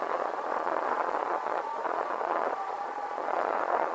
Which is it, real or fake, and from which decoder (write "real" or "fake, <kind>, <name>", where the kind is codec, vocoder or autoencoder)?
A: fake, vocoder, Vocos